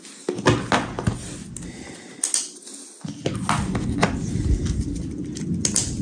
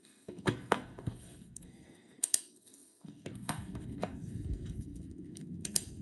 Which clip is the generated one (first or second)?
second